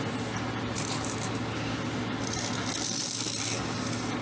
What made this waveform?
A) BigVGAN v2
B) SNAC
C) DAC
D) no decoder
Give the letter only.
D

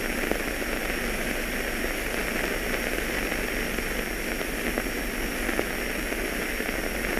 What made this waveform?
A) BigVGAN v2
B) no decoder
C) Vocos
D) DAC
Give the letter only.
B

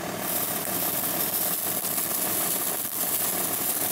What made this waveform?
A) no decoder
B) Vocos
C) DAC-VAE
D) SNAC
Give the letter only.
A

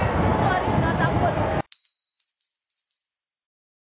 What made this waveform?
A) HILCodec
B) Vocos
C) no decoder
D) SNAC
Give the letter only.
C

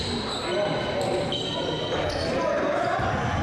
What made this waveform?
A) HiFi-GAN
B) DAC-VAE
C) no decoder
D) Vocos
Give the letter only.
C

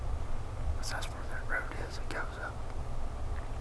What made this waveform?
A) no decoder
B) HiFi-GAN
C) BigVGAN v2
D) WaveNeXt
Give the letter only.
A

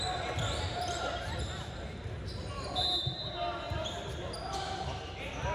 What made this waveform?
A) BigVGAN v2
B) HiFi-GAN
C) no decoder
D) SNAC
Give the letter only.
C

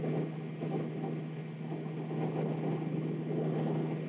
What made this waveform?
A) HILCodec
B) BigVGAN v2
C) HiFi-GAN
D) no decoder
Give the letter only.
D